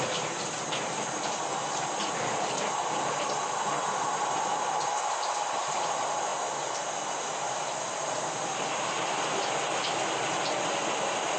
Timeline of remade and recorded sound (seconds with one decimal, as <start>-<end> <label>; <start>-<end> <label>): 0.0-11.4 recorded

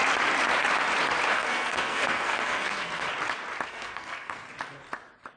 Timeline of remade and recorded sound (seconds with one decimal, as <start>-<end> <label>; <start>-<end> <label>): 0.0-1.3 recorded; 1.3-3.1 remade; 3.1-3.7 recorded; 3.7-4.5 remade; 4.5-5.4 recorded

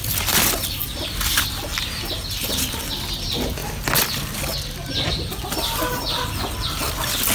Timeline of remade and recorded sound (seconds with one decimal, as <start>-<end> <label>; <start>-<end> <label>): 0.0-7.3 recorded